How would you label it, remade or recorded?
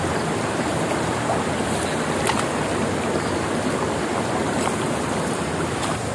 recorded